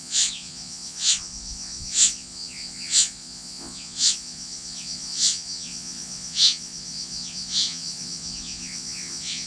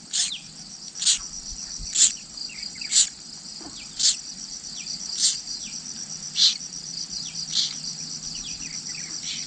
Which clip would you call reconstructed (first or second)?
first